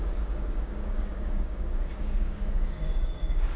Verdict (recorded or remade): remade